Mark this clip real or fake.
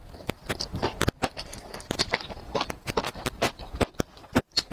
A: real